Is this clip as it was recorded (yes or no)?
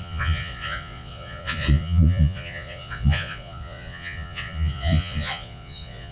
no